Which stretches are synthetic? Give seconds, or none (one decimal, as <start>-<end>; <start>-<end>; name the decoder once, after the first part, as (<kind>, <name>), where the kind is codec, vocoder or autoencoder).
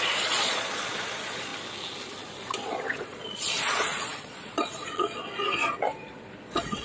0.0-1.5 (vocoder, Vocos); 2.4-6.8